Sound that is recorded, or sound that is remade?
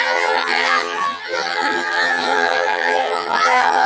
remade